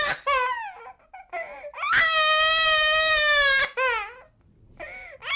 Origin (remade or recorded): recorded